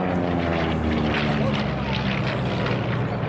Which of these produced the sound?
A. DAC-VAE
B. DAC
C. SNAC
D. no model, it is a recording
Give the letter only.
D